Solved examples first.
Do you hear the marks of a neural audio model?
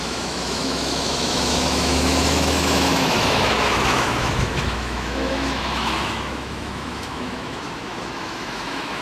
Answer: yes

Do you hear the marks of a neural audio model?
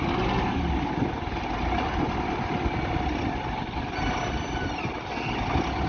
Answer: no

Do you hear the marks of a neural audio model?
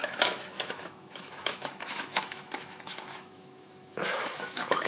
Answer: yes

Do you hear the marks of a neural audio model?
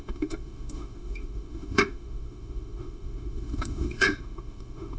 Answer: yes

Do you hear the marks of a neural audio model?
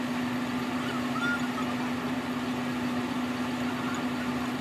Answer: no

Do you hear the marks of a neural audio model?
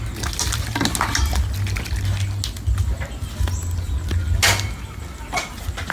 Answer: no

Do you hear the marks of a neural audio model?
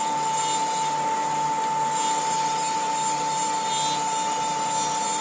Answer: no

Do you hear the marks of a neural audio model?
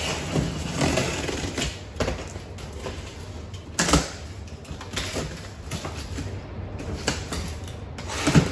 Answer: no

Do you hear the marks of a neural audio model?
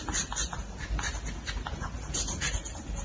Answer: no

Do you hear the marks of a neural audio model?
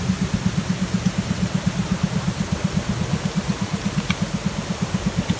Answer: no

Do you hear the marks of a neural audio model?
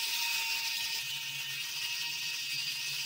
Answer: no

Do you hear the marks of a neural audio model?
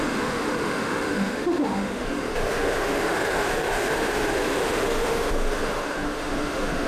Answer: yes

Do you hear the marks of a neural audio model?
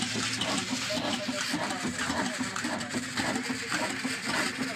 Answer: no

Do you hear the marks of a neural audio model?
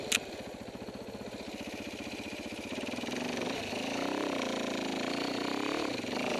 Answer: no